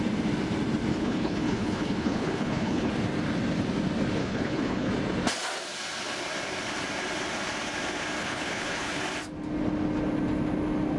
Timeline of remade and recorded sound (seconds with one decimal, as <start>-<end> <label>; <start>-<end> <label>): 0.0-0.9 recorded; 0.9-2.9 remade; 2.9-4.2 recorded; 4.2-4.9 remade; 4.9-8.2 recorded; 8.2-9.0 remade; 9.0-11.0 recorded

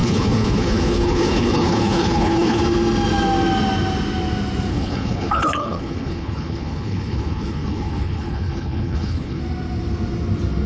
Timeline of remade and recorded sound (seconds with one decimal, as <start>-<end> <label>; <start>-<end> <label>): 0.0-2.6 remade; 2.6-4.7 recorded; 4.7-9.4 remade; 9.4-10.7 recorded

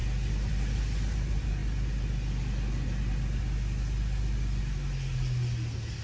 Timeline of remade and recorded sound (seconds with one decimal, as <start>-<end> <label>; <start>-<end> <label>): 0.0-6.0 recorded